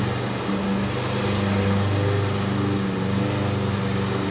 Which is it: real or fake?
real